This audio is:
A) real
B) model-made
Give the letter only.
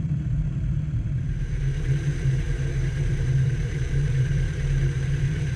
B